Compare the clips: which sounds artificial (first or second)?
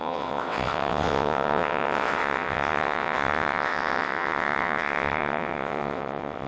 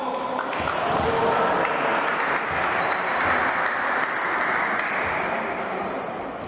first